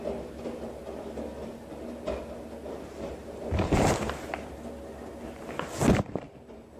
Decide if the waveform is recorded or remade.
recorded